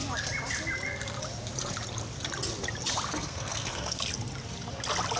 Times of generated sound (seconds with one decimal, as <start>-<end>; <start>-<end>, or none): 3.1-4.0